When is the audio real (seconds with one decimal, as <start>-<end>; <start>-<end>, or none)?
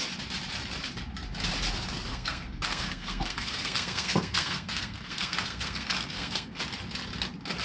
0.0-2.1; 6.6-7.6